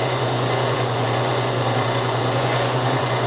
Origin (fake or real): fake